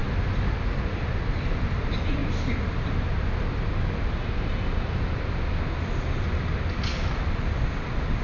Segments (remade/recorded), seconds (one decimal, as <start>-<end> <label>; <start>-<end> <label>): 0.0-8.2 recorded

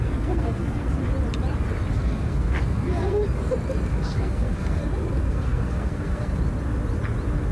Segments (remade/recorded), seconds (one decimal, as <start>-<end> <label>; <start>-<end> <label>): 0.0-1.0 remade; 1.0-1.9 recorded; 1.9-3.2 remade; 3.2-3.9 recorded; 3.9-4.8 remade; 4.8-5.3 recorded; 5.3-6.3 remade; 6.3-7.5 recorded

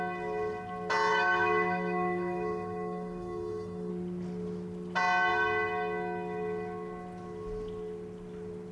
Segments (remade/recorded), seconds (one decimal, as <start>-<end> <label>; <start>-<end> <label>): 0.0-1.1 recorded; 1.1-3.9 remade; 3.9-8.7 recorded